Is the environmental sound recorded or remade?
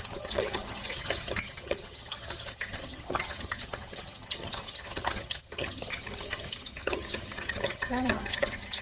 remade